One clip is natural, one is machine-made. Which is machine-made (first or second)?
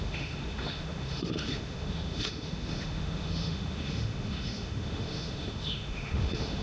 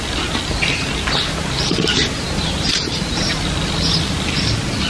first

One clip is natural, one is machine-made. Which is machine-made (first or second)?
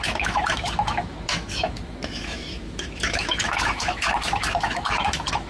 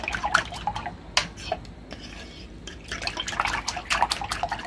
first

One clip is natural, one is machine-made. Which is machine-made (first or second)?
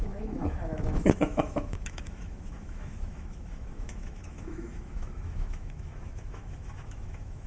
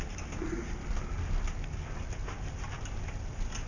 first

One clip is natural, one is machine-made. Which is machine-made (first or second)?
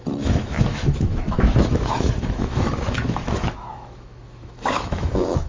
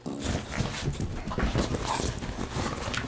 first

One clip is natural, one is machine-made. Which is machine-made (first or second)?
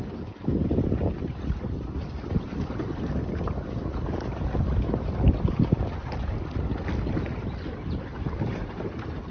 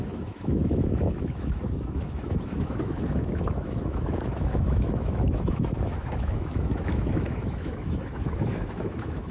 second